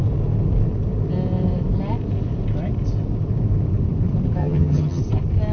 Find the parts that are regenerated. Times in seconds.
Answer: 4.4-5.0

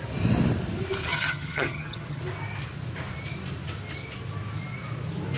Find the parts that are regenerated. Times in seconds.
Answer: 1.1-2.2

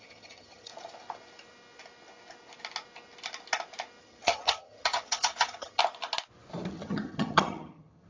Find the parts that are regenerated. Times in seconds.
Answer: 0.0-0.7; 4.0-5.8; 6.7-8.1

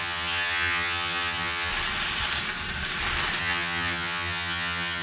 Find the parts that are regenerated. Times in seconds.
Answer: 0.0-1.7; 3.4-5.0

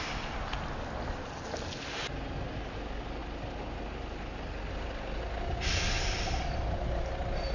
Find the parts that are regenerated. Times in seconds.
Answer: none